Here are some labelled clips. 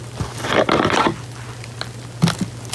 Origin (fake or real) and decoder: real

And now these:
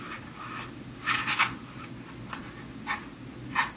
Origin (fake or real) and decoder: real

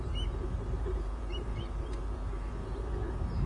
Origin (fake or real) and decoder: fake, vocoder, BigVGAN v2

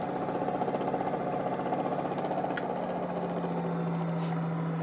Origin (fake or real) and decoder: real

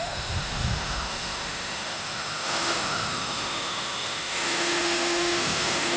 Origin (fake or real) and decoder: fake, autoencoder, DAC-VAE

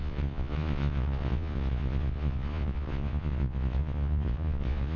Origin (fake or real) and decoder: fake, vocoder, Vocos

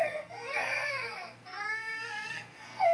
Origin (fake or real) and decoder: fake, codec, SNAC